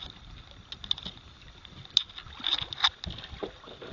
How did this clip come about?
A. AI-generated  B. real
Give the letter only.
B